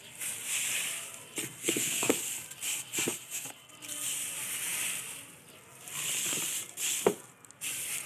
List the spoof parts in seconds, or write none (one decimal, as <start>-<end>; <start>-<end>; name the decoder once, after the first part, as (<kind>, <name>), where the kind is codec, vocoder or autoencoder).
1.6-2.1 (codec, SNAC)